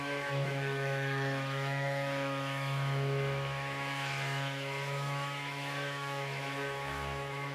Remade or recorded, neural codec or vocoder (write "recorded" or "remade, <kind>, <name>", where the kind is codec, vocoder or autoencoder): remade, autoencoder, DAC-VAE